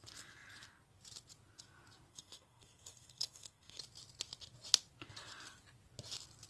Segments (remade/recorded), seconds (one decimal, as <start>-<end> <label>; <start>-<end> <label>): 0.0-2.1 recorded; 2.1-3.8 remade; 3.8-6.5 recorded